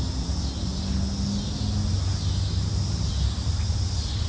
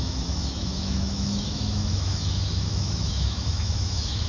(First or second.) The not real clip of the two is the second